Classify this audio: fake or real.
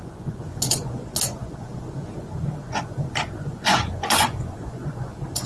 fake